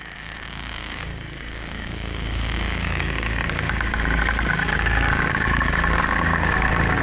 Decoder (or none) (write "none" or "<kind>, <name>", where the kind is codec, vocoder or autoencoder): codec, DAC